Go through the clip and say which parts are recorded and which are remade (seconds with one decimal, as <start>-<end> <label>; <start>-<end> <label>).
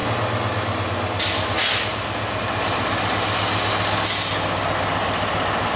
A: 0.0-5.8 recorded